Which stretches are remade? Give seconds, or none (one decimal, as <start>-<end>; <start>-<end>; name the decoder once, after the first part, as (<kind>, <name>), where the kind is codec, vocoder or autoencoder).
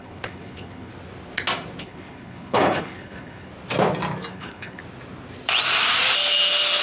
0.0-0.9 (codec, HILCodec); 1.8-3.5; 4.3-4.8